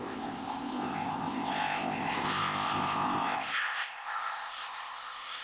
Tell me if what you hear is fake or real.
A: fake